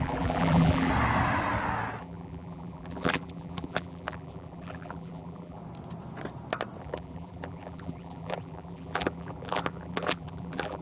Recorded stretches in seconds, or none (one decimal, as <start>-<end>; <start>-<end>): 0.9-2.0; 5.6-6.8